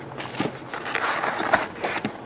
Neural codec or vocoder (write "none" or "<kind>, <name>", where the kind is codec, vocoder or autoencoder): none